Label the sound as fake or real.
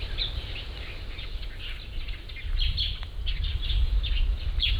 real